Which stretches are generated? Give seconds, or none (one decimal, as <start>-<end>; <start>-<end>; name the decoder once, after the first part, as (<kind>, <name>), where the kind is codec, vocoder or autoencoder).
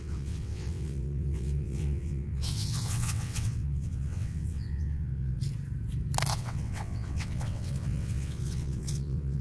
0.0-5.4 (vocoder, WaveNeXt); 6.3-9.4